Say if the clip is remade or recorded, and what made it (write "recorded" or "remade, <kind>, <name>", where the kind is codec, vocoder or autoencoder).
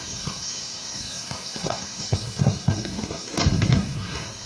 remade, codec, SNAC